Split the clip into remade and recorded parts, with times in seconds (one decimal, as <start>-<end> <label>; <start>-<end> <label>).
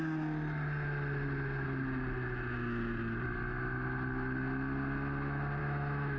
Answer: 0.0-5.6 recorded; 5.6-6.2 remade